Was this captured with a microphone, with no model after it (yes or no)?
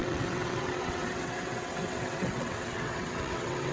no